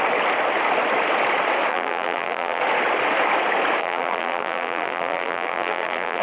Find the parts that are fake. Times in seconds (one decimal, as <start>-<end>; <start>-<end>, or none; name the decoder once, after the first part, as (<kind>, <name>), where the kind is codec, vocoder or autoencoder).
1.7-2.6 (vocoder, BigVGAN v2); 3.8-6.2